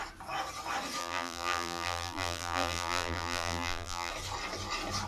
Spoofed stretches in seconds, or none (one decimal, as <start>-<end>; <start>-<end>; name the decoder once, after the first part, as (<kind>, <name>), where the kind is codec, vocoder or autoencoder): 1.0-4.1 (vocoder, BigVGAN v2)